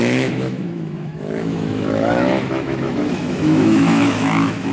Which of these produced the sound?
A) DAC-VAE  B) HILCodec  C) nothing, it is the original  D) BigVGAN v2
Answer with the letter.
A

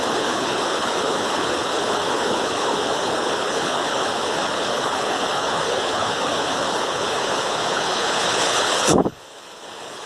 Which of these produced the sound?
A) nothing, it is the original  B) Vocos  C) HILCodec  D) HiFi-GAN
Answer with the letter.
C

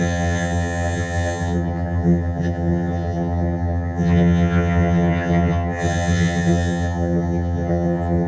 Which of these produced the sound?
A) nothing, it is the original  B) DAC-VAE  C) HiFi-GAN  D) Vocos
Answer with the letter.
C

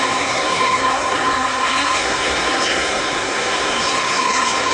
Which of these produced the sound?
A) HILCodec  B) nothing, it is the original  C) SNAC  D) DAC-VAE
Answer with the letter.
C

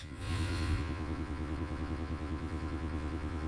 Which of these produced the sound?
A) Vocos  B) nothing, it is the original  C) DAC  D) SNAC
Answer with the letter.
A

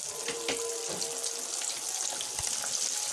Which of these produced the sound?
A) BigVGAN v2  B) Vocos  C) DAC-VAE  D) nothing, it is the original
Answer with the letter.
D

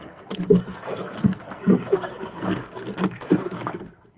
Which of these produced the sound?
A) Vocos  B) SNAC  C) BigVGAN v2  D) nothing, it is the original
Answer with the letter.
B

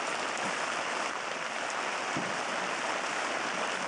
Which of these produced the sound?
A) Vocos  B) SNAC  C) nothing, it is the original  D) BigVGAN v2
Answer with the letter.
D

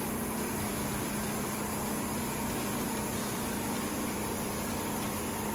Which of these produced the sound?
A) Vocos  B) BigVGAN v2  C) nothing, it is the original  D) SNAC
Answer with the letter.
B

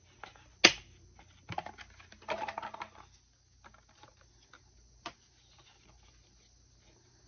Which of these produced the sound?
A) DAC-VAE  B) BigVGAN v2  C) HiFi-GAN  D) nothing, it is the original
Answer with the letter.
D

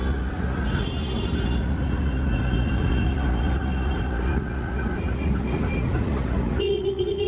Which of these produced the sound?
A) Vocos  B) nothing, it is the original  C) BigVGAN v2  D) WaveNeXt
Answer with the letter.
A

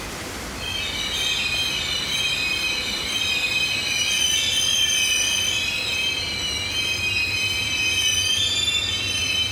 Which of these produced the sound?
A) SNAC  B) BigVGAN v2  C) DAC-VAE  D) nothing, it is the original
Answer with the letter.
D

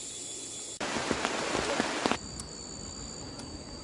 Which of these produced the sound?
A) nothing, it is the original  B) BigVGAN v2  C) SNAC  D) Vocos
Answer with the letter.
A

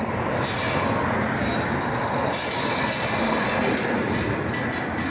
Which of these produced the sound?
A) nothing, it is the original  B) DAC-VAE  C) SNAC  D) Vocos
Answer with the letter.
A